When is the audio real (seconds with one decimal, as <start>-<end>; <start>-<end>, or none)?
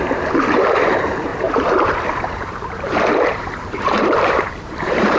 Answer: none